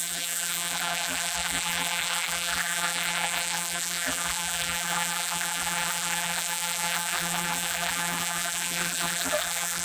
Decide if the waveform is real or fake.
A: fake